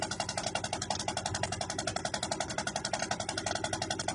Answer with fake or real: real